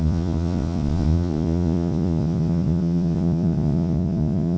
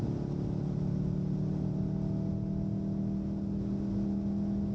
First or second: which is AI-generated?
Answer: first